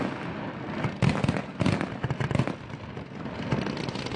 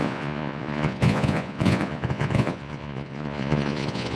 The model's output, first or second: second